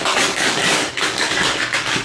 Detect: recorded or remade remade